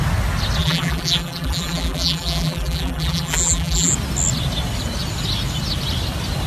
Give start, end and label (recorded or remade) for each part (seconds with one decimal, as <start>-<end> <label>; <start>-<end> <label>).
0.0-0.6 recorded; 0.6-3.9 remade; 3.9-6.5 recorded